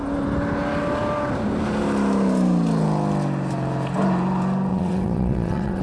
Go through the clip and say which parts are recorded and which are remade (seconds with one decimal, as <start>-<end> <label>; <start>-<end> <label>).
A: 0.0-4.7 recorded; 4.7-5.8 remade